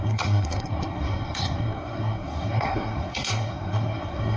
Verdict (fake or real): fake